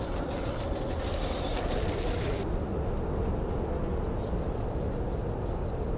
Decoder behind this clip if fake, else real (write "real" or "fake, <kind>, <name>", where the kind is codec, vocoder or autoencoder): real